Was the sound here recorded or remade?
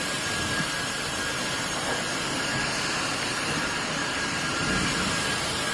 remade